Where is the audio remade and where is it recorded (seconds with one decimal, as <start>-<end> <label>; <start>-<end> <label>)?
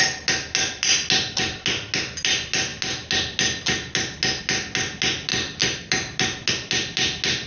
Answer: 0.0-7.5 recorded